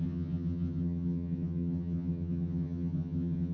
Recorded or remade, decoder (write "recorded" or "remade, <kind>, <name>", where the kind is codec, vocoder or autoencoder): remade, vocoder, HiFi-GAN